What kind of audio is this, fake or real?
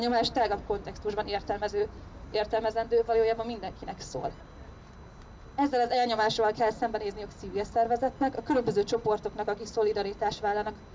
real